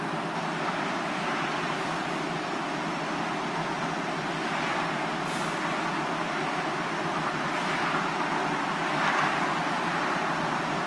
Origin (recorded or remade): recorded